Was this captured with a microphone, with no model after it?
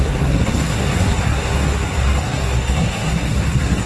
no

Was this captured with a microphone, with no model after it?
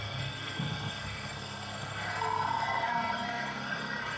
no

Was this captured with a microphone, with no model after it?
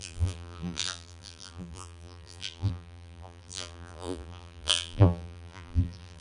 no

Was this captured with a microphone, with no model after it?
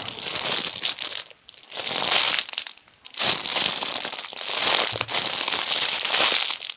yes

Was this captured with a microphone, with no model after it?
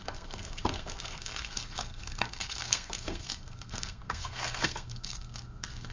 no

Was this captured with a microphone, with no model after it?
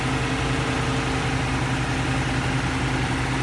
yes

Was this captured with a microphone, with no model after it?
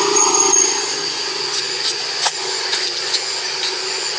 no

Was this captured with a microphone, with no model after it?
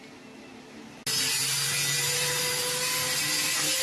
yes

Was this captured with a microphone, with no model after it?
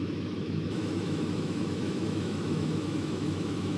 no